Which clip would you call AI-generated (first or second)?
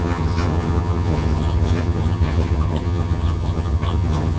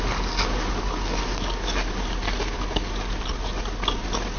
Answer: first